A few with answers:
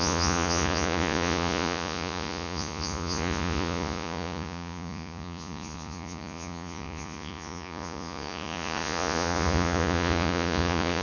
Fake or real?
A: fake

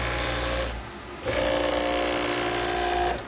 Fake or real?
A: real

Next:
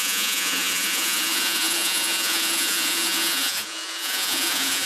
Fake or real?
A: fake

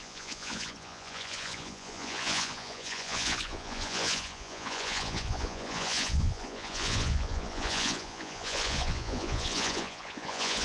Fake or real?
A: fake